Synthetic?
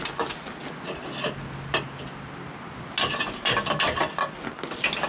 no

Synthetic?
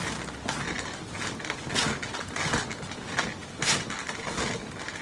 no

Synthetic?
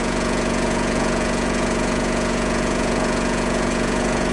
yes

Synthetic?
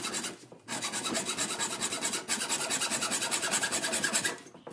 no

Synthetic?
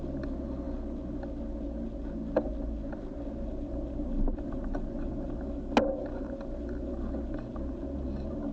no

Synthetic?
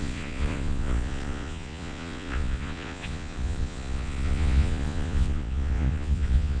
yes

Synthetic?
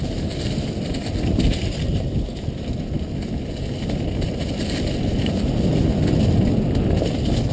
no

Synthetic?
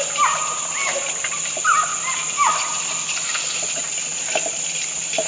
no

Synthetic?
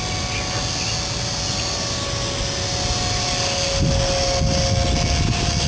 no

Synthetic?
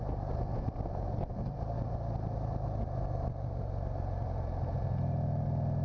no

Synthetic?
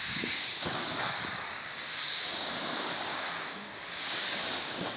yes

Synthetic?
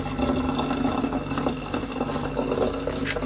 no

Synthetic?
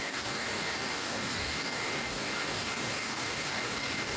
yes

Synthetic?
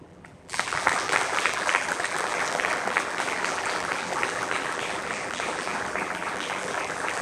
yes